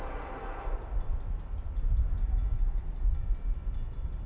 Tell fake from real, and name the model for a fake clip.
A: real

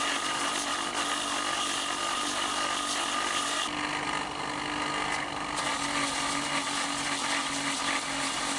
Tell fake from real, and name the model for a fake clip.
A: real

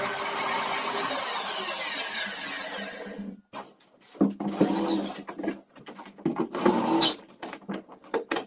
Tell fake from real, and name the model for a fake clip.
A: real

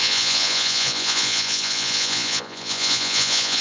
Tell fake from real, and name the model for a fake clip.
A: fake, vocoder, Vocos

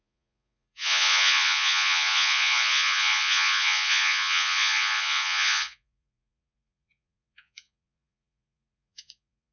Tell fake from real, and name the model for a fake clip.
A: fake, vocoder, Vocos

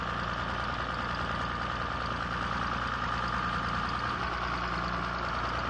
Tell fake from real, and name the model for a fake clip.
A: real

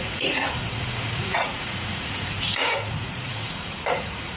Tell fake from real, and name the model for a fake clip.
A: fake, vocoder, Vocos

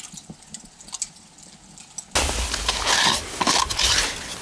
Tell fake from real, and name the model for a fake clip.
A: real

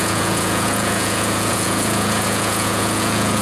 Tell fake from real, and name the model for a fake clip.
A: fake, vocoder, Vocos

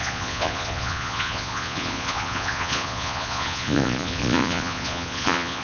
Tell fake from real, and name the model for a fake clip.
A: fake, vocoder, Vocos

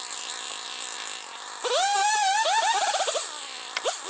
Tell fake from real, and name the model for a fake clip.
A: real